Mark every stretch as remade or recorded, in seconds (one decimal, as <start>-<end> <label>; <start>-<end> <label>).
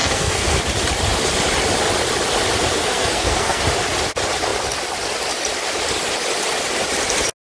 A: 0.0-0.6 remade; 0.6-2.8 recorded; 2.8-3.6 remade; 3.6-7.5 recorded